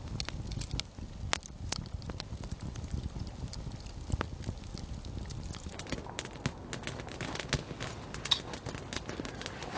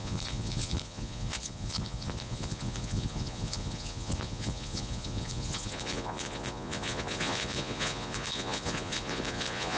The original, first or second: first